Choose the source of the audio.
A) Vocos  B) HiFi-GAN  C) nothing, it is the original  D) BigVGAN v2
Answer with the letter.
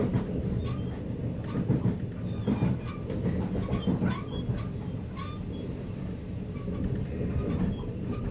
C